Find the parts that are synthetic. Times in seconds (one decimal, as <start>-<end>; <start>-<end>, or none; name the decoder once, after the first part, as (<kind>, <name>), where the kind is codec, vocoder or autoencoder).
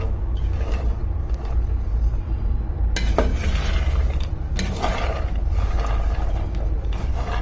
none